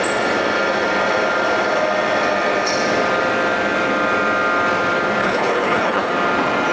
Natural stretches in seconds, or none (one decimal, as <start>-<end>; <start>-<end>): 0.0-5.2; 6.1-6.7